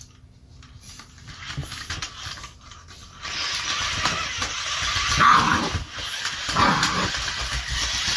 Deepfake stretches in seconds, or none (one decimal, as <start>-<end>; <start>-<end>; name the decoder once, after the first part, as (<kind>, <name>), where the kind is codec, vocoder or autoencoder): 3.0-3.8 (vocoder, BigVGAN v2)